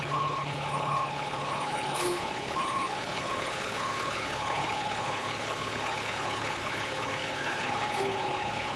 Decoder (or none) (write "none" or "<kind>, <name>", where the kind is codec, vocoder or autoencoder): codec, HILCodec